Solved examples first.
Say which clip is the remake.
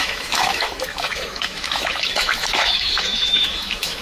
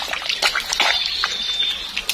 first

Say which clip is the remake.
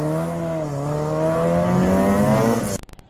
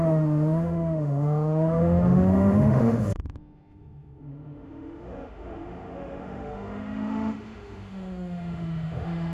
second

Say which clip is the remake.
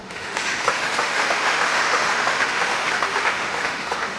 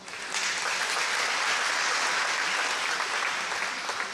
first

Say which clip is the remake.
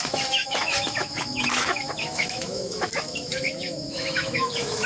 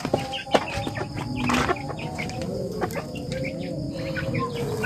first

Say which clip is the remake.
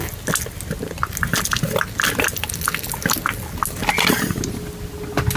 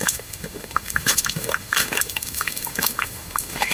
second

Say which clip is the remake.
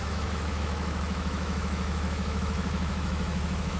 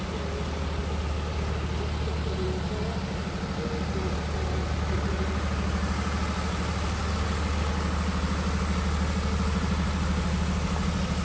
first